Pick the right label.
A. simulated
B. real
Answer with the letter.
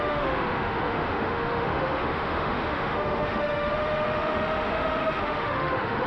A